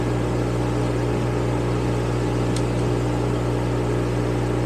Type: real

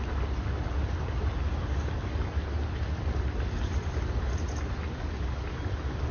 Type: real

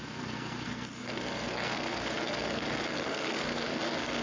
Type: fake